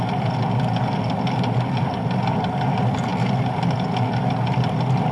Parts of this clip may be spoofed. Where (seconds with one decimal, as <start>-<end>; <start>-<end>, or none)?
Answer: none